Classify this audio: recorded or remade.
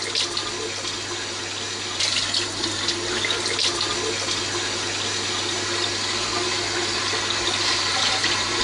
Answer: recorded